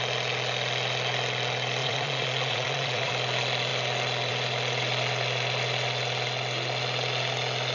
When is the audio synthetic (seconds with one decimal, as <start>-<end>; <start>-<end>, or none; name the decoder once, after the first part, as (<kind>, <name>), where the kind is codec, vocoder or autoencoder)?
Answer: 1.8-3.1 (vocoder, Vocos)